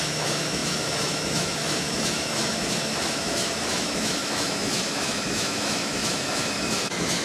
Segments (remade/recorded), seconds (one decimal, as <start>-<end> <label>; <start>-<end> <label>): 0.0-7.2 remade